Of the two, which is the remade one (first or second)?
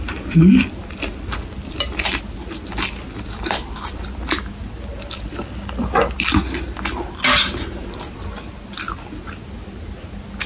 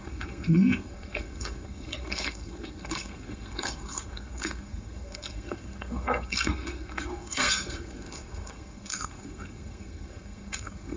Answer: second